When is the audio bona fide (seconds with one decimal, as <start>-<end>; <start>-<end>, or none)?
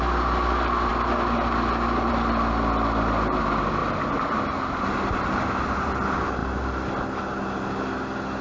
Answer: 0.0-8.4